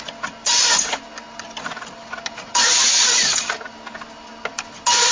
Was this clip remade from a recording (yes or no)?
no